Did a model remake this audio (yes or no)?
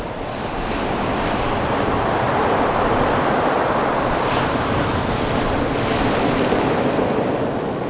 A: no